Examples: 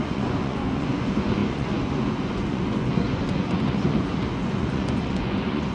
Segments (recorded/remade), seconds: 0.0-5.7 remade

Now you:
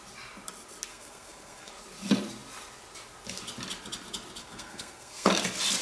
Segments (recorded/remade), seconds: 0.0-0.9 recorded; 0.9-1.7 remade; 1.7-4.4 recorded; 4.4-5.3 remade; 5.3-5.8 recorded

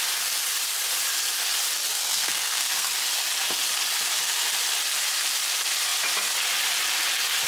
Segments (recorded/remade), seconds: 0.0-1.9 recorded; 1.9-2.9 remade; 2.9-7.5 recorded

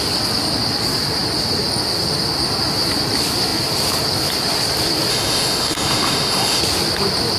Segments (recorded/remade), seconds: 0.0-5.1 recorded; 5.1-6.6 remade; 6.6-7.4 recorded

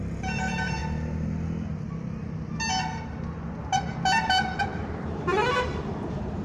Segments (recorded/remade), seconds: 0.0-0.8 remade; 0.8-4.6 recorded; 4.6-6.4 remade

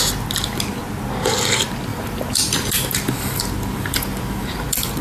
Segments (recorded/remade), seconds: 0.0-1.9 recorded; 1.9-5.0 remade

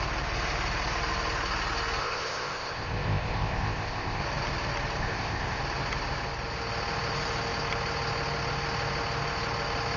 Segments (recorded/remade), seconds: 0.0-2.0 recorded; 2.0-4.2 remade; 4.2-5.0 recorded; 5.0-5.6 remade; 5.6-10.0 recorded

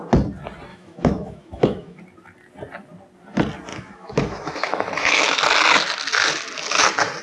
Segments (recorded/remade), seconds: 0.0-0.7 recorded; 0.7-2.0 remade; 2.0-3.7 recorded; 3.7-5.4 remade; 5.4-7.2 recorded